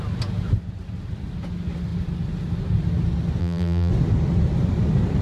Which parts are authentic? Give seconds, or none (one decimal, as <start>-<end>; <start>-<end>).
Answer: 0.0-3.4; 3.9-5.2